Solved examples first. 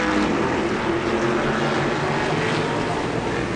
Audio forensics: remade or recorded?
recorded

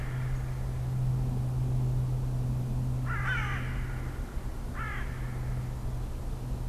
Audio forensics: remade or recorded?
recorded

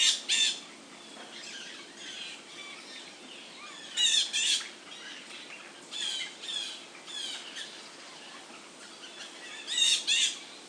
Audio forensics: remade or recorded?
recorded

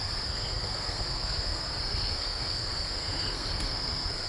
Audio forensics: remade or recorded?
remade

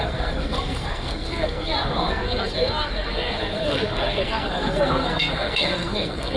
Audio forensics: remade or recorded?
remade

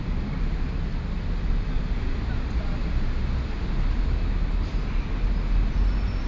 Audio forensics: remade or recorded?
recorded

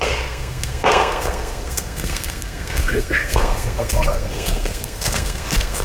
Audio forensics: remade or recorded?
remade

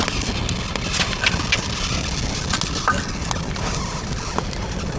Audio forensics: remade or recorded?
recorded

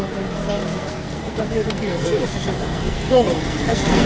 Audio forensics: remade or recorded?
remade